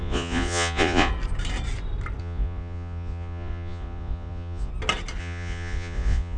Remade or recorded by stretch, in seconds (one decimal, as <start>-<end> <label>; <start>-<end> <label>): 0.0-1.1 remade; 1.1-2.2 recorded; 2.2-4.7 remade; 4.7-5.2 recorded; 5.2-6.4 remade